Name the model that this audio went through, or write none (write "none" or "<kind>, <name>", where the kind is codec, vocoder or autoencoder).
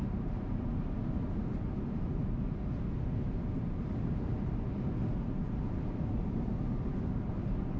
vocoder, BigVGAN v2